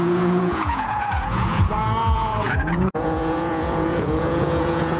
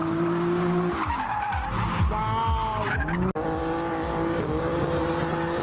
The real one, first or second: second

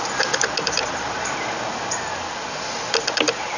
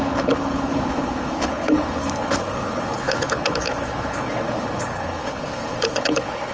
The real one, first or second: first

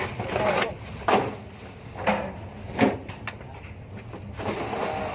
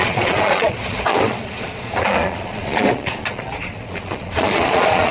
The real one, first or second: first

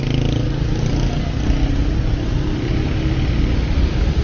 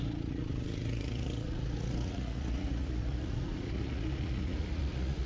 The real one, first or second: first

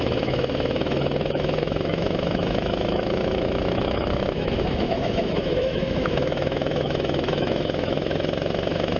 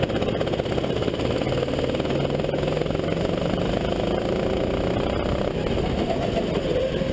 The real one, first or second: second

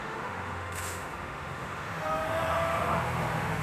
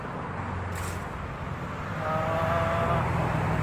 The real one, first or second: second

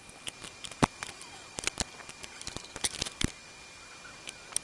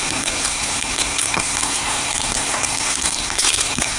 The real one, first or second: first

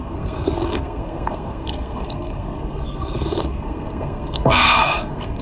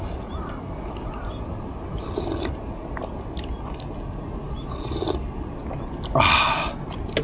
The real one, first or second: second